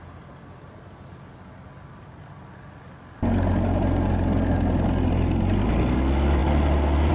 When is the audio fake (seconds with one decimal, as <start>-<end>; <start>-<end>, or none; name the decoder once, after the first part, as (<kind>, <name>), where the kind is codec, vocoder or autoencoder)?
none